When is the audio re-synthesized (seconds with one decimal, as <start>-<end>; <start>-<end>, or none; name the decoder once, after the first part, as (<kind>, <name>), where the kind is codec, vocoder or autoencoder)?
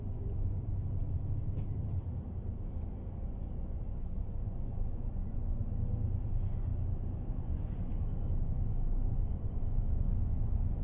0.0-0.8 (vocoder, Vocos); 3.2-5.6; 6.1-6.7; 7.3-7.9; 8.4-10.8